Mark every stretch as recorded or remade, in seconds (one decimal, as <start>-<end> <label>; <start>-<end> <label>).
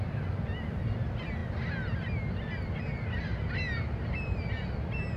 0.0-5.2 recorded